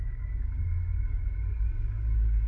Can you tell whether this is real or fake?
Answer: fake